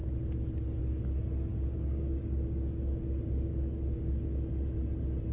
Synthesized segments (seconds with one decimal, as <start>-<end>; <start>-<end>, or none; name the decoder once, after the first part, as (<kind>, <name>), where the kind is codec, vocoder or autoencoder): 1.5-4.2 (codec, DAC)